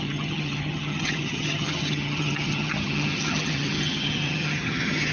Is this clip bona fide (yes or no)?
no